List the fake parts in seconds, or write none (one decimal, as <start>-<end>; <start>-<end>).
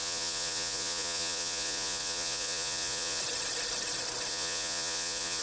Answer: 0.0-3.2; 4.3-5.4